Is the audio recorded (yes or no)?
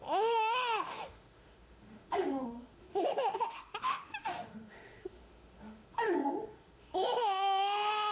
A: no